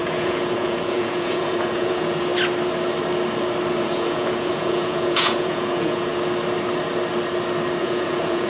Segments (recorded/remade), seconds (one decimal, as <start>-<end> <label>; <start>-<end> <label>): 0.0-2.3 remade; 2.3-3.8 recorded; 3.8-6.1 remade; 6.1-7.8 recorded; 7.8-8.5 remade